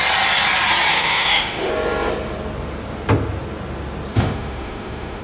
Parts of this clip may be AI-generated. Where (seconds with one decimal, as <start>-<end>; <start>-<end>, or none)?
0.9-1.7; 4.1-5.2